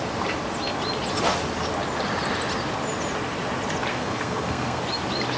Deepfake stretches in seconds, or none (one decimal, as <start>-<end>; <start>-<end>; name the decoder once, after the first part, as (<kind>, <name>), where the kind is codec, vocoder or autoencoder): 3.9-4.8 (codec, SNAC)